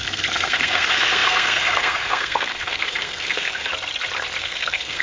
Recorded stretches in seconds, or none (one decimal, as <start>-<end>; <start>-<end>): 3.7-4.4